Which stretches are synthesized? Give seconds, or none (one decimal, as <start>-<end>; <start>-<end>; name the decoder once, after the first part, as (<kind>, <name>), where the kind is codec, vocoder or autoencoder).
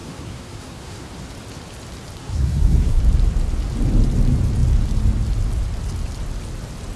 0.0-1.1 (codec, SNAC); 2.2-3.0